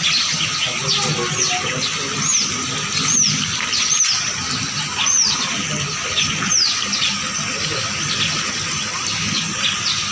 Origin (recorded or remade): recorded